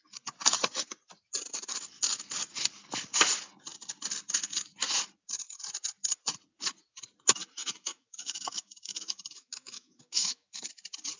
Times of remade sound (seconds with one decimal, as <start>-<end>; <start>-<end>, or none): 7.6-10.7